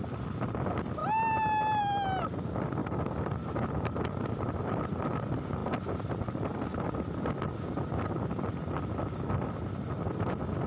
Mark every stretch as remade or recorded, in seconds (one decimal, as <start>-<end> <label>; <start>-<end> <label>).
0.0-10.7 recorded